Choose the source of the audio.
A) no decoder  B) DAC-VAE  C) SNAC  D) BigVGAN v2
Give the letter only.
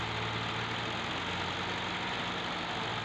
A